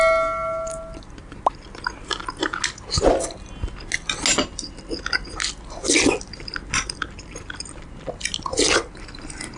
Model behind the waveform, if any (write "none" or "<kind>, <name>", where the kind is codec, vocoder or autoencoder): none